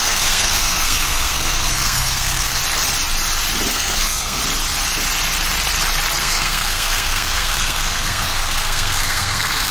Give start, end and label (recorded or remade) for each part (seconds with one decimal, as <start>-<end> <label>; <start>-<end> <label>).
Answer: 0.0-2.6 remade; 2.6-3.7 recorded; 3.7-4.4 remade; 4.4-6.2 recorded; 6.2-9.7 remade